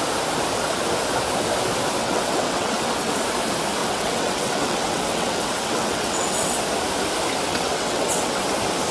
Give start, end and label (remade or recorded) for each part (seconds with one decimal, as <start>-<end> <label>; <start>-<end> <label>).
0.0-2.0 recorded; 2.0-3.1 remade; 3.1-3.8 recorded; 3.8-6.6 remade; 6.6-7.5 recorded; 7.5-8.4 remade; 8.4-8.9 recorded